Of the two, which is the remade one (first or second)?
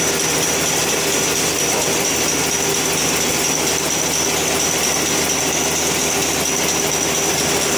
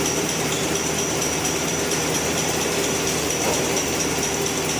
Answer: second